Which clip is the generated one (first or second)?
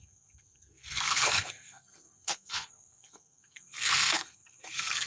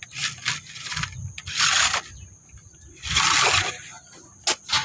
first